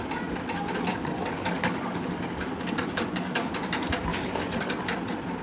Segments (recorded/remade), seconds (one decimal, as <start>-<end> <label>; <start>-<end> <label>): 0.0-0.9 recorded; 0.9-3.5 remade; 3.5-4.1 recorded; 4.1-4.7 remade; 4.7-5.4 recorded